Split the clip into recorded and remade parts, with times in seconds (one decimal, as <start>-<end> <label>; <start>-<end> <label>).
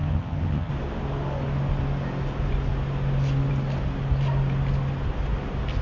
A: 0.0-0.7 remade; 0.7-5.8 recorded